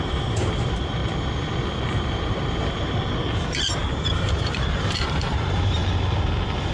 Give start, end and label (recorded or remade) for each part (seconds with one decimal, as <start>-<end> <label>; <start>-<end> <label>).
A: 0.0-1.0 remade; 1.0-2.1 recorded; 2.1-5.8 remade; 5.8-6.7 recorded